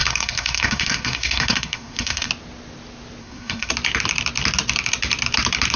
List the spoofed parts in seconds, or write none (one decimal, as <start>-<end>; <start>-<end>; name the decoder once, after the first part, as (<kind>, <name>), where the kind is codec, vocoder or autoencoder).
0.0-2.3 (codec, SNAC); 3.2-3.7